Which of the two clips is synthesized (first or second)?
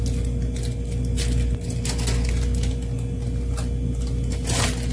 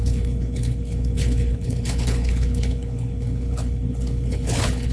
second